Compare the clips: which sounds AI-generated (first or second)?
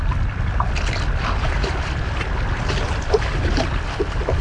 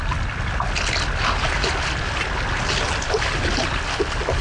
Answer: first